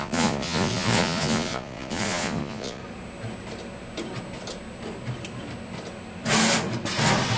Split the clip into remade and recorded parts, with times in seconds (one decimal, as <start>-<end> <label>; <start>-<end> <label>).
0.0-2.8 remade; 2.8-7.4 recorded